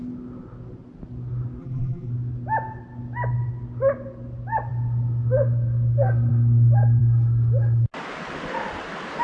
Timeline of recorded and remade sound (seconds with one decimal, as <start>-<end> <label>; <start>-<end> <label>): 0.0-1.6 recorded; 1.6-2.1 remade; 2.1-9.2 recorded